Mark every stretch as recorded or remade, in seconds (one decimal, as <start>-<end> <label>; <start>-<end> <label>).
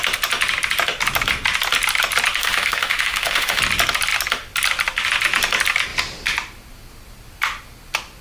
0.0-2.4 recorded; 2.4-3.6 remade; 3.6-8.2 recorded